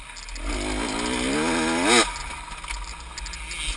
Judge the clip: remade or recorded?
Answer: recorded